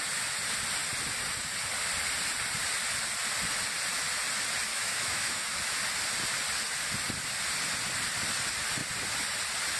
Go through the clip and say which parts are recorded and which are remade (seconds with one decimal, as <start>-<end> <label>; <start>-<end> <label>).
0.0-4.7 recorded; 4.7-5.8 remade; 5.8-9.8 recorded